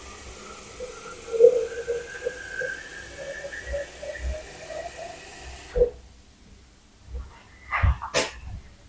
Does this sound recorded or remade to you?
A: recorded